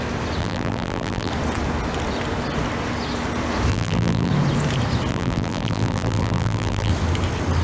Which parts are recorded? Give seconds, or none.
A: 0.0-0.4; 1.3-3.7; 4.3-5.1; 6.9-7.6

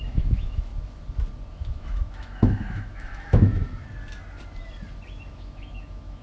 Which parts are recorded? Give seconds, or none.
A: 0.7-1.5; 3.6-5.3

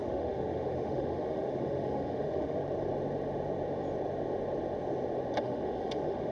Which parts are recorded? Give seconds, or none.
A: 2.6-5.4

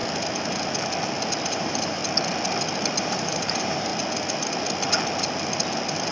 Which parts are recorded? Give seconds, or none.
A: 0.0-1.5; 2.0-3.0; 3.9-6.1

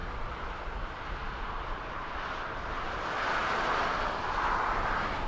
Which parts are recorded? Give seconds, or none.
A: 0.0-5.3